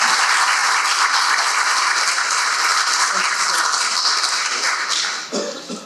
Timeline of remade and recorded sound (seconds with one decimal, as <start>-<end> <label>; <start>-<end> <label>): 0.0-5.9 recorded